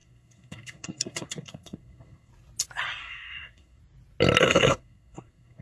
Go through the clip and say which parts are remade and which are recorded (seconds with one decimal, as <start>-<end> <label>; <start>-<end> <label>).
0.0-2.3 remade; 2.3-3.0 recorded; 3.0-3.8 remade; 3.8-4.4 recorded; 4.4-5.6 remade